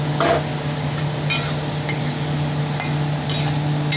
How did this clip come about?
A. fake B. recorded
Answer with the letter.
B